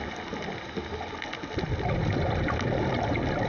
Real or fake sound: real